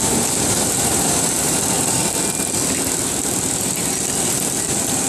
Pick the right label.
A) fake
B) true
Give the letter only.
B